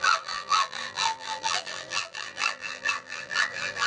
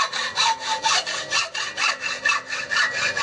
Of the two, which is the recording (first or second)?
second